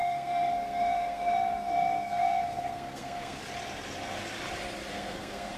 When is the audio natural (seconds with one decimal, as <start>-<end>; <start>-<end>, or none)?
3.4-4.9